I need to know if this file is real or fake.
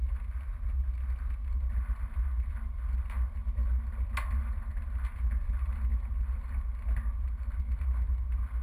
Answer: real